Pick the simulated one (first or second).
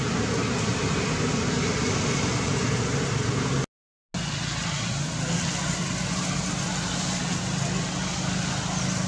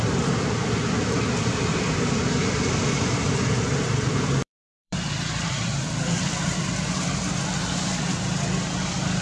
second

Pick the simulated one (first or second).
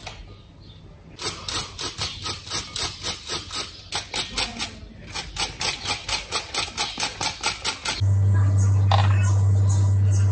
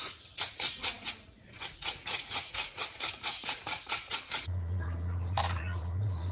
second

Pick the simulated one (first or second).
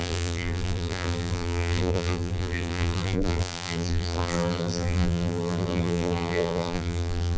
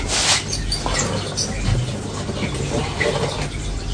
first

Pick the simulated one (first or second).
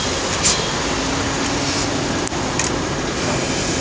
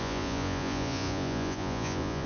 second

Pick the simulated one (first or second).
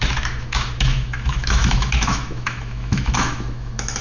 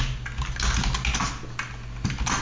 first